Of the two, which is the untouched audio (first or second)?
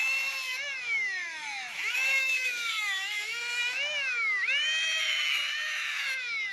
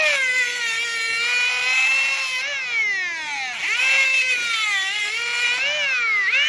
second